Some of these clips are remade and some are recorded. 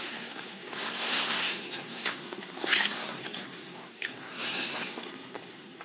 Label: remade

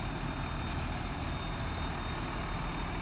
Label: recorded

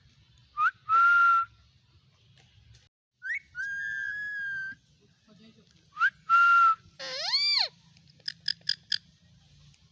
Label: recorded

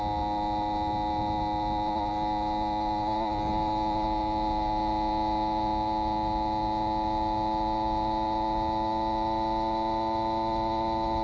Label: recorded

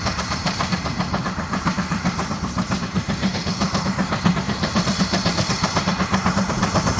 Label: remade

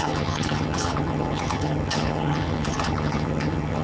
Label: remade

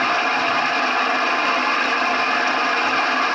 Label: recorded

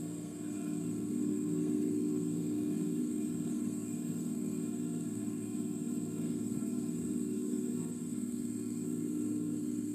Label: remade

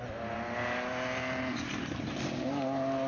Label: recorded